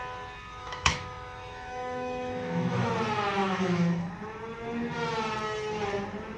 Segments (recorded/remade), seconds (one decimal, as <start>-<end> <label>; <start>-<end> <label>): 0.0-0.6 recorded; 0.6-2.9 remade; 2.9-3.4 recorded; 3.4-4.1 remade; 4.1-6.4 recorded